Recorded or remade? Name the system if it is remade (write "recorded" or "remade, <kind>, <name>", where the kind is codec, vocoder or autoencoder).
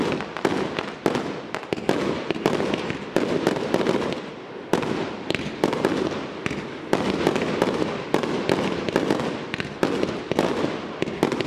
recorded